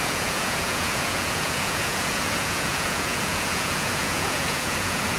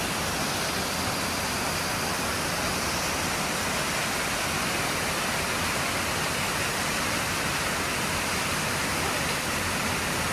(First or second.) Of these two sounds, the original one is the second